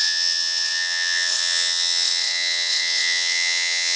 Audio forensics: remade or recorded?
remade